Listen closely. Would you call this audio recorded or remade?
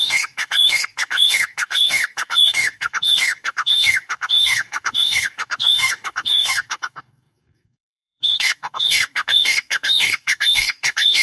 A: remade